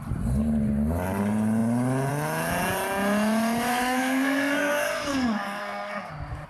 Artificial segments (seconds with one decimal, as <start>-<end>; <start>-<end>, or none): 3.7-6.1